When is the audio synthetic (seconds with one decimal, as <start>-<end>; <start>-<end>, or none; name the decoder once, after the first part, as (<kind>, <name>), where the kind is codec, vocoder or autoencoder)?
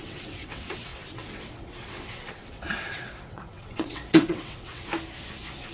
0.0-4.9 (vocoder, WaveNeXt)